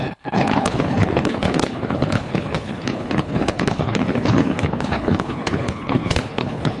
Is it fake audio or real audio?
fake